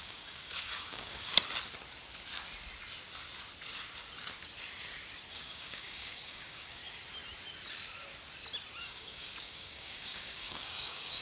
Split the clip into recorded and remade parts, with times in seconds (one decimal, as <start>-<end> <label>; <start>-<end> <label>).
0.0-1.3 remade; 1.3-5.3 recorded; 5.3-6.8 remade; 6.8-8.8 recorded; 8.8-11.2 remade